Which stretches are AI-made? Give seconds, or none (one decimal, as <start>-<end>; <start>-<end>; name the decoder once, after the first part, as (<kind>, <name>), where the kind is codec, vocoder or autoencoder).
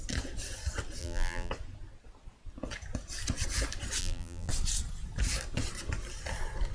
1.0-1.5 (vocoder, BigVGAN v2); 4.0-4.5